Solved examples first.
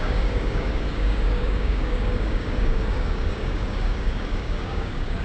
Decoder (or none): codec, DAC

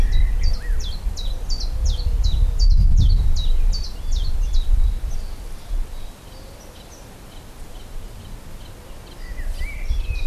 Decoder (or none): none